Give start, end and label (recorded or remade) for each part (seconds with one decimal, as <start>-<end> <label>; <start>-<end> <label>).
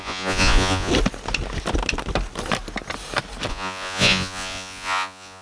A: 0.0-0.9 remade; 0.9-3.5 recorded; 3.5-5.4 remade